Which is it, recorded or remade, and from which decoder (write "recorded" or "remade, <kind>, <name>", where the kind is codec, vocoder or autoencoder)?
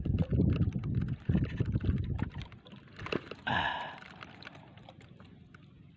remade, vocoder, BigVGAN v2